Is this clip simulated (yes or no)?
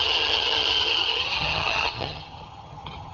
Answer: yes